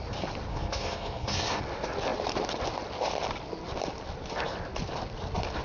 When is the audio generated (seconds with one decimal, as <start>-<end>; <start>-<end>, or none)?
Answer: 0.5-1.6